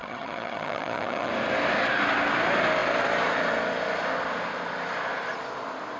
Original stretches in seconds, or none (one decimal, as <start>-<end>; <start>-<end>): 1.3-6.0